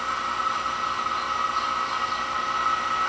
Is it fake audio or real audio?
real